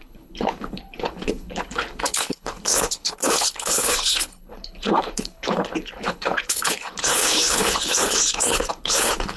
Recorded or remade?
remade